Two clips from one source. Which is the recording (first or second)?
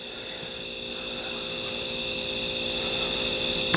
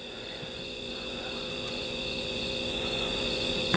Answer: first